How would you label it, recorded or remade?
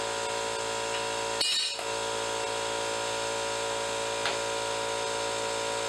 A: recorded